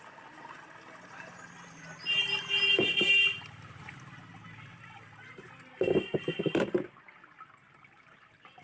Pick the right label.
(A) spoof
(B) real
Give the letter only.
B